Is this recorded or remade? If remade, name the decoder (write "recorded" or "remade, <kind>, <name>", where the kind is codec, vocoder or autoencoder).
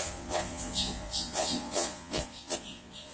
remade, vocoder, Vocos